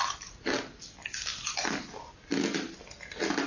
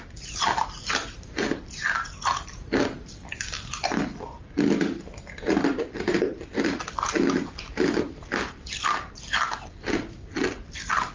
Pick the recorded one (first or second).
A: first